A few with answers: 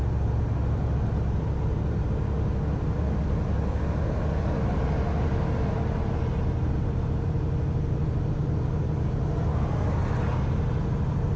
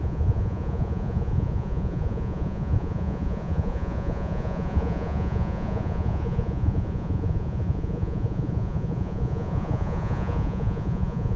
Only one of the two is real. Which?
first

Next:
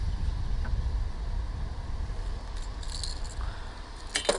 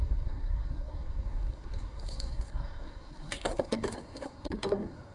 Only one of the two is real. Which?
first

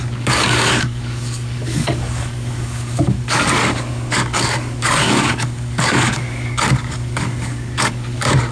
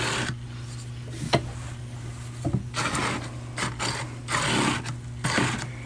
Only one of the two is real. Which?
second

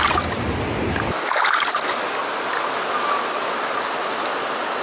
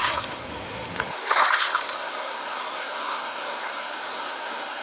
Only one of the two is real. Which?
first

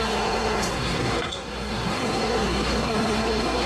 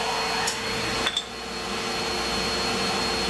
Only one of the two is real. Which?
second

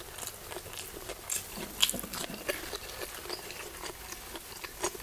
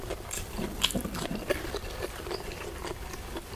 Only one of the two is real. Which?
first